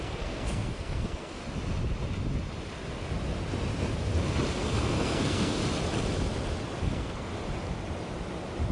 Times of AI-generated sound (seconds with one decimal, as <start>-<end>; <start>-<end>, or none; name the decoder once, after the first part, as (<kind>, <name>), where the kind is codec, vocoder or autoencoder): 0.0-1.4 (codec, SNAC); 4.5-5.6; 6.8-7.3